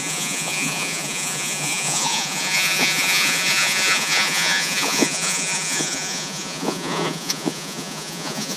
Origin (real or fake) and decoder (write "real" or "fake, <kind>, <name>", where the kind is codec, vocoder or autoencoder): fake, vocoder, Vocos